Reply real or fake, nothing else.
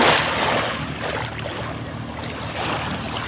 real